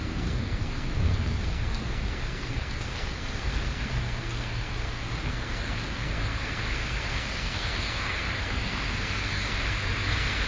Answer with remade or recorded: remade